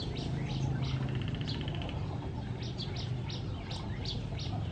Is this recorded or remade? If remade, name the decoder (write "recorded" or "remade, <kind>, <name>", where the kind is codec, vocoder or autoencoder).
recorded